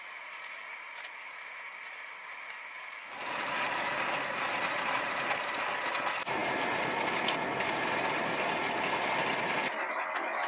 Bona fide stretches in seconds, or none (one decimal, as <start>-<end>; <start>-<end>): 0.0-10.5